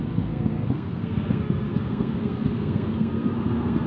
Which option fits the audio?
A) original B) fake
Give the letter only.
B